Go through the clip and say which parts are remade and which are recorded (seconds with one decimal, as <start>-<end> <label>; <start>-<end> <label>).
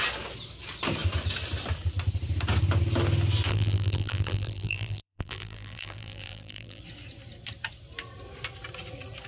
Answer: 0.0-3.5 recorded; 3.5-6.8 remade; 6.8-9.3 recorded